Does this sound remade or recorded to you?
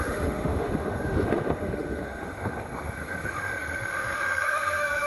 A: remade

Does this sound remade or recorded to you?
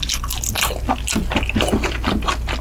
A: recorded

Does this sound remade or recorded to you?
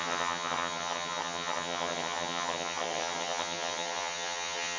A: remade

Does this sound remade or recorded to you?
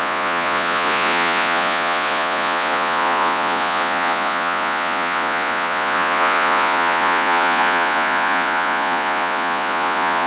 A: remade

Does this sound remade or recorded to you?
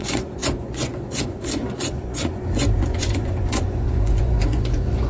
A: remade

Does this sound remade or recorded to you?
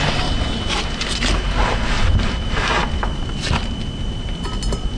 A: recorded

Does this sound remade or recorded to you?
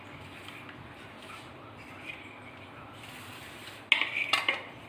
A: recorded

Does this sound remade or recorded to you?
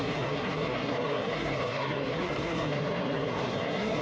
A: remade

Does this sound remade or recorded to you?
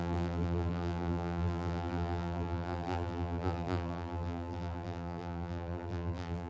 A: remade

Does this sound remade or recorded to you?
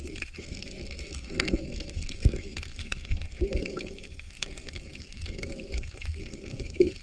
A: remade